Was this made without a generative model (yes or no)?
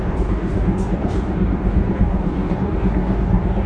no